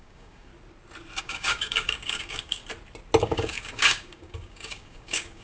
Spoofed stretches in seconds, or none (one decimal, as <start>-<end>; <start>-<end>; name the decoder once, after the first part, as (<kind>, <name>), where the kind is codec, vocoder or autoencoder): 0.0-0.5 (codec, DAC); 1.2-2.6; 3.2-5.4